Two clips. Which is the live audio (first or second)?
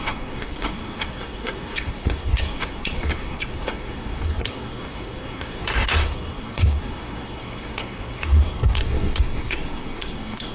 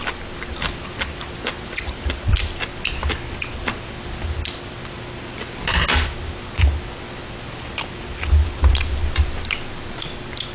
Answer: second